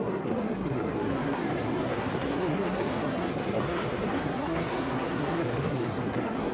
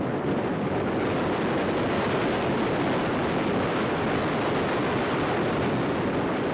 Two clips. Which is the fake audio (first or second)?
first